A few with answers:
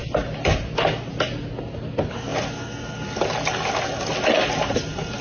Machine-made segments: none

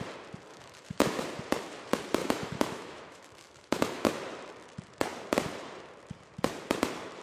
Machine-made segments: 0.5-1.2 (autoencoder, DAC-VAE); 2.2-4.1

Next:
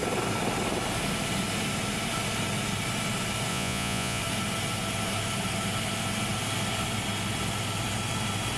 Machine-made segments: 3.5-4.2 (vocoder, Vocos)